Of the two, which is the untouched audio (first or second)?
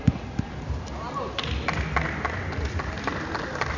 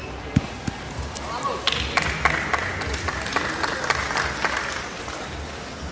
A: second